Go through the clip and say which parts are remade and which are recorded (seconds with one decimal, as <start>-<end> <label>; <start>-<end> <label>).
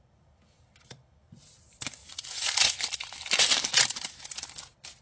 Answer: 0.0-2.0 recorded; 2.0-2.8 remade; 2.8-5.0 recorded